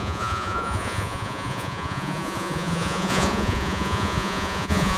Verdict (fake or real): fake